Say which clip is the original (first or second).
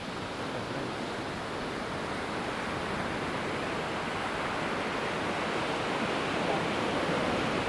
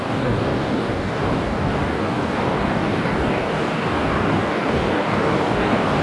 first